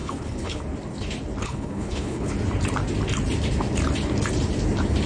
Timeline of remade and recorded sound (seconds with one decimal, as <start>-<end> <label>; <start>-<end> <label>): 0.0-0.6 remade; 0.6-1.4 recorded; 1.4-2.3 remade; 2.3-5.1 recorded